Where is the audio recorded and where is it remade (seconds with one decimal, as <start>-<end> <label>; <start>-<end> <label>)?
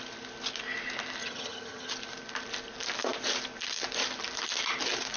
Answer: 0.0-1.2 recorded; 1.2-1.9 remade; 1.9-5.2 recorded